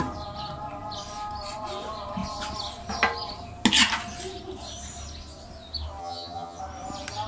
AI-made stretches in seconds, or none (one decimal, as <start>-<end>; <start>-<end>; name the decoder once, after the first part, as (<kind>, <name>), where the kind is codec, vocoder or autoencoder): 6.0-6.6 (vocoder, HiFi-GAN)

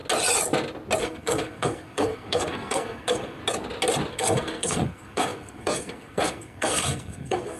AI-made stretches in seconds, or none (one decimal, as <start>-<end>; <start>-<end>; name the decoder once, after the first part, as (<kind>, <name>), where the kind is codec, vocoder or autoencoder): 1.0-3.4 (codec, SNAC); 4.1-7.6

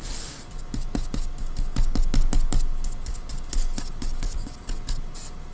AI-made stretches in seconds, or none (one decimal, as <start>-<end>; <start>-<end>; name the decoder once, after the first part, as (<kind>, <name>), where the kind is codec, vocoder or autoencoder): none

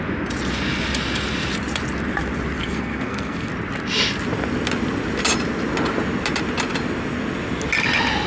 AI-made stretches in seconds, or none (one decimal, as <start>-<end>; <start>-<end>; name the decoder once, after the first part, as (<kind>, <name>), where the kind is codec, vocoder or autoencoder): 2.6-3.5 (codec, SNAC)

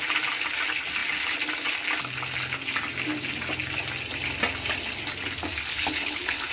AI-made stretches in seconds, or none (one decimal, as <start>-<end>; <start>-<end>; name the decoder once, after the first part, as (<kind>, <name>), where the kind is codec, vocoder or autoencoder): 5.7-6.5 (codec, HILCodec)

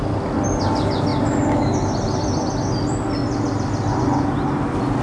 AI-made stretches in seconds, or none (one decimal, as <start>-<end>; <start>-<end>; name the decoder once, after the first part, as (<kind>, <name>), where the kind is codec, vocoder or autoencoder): 1.1-2.5 (vocoder, BigVGAN v2); 3.2-4.0